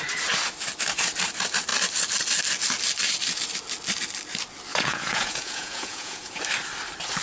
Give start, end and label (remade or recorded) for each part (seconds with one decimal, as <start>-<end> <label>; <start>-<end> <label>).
0.0-4.7 recorded; 4.7-6.4 remade; 6.4-7.2 recorded